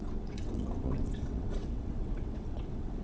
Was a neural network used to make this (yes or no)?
yes